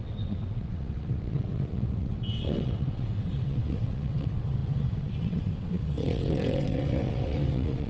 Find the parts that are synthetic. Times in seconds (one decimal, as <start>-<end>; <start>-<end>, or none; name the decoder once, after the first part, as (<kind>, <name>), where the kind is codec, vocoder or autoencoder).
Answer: 0.0-7.9 (vocoder, WaveNeXt)